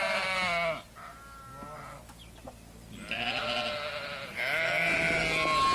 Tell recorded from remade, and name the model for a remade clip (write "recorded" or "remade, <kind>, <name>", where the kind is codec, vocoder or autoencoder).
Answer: recorded